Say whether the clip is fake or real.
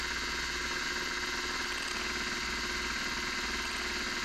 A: real